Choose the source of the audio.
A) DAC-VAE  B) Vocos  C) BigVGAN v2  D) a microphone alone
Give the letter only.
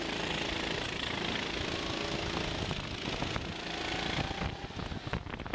D